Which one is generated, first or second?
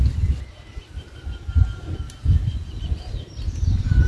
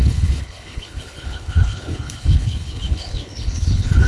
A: second